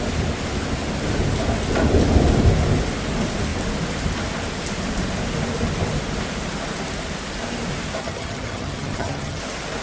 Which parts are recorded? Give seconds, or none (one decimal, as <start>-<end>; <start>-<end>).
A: 0.0-8.0; 9.4-9.8